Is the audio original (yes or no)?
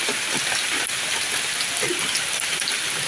yes